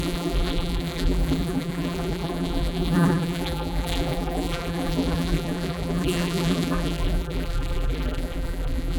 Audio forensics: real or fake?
fake